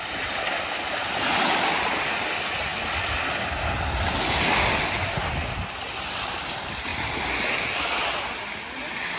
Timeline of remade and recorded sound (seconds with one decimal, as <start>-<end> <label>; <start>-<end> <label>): 0.0-9.2 recorded